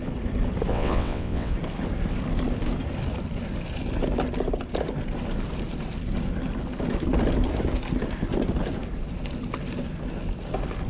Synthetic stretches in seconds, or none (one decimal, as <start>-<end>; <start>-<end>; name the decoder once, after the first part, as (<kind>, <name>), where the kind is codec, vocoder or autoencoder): 0.7-1.5 (vocoder, WaveNeXt)